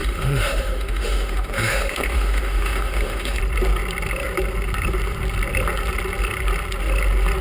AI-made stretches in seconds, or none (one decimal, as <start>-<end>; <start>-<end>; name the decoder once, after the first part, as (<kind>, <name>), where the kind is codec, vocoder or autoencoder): 0.0-3.4 (autoencoder, DAC-VAE)